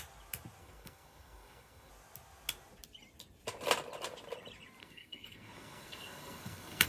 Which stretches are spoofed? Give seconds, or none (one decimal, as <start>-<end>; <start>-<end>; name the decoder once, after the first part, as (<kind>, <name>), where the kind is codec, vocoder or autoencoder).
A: 0.6-1.9 (codec, SNAC); 4.8-6.9